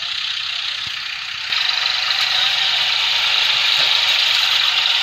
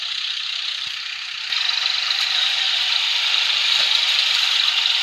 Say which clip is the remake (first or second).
second